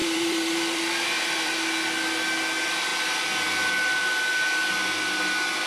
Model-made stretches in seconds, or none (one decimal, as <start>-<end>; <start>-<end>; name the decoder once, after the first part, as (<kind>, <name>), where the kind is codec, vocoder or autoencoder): 0.0-1.5 (vocoder, BigVGAN v2)